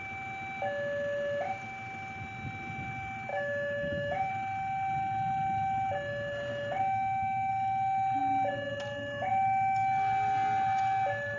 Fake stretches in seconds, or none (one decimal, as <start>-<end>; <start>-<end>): 3.3-4.3; 6.5-7.5